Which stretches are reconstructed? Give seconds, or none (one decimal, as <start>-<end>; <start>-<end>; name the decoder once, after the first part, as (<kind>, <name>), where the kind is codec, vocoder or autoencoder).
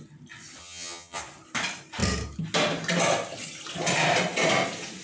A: 0.6-1.2 (vocoder, HiFi-GAN)